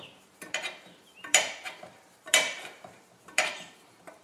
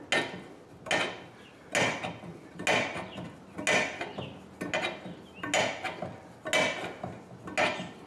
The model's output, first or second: first